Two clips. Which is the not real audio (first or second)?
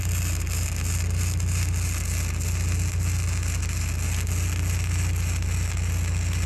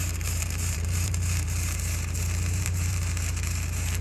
second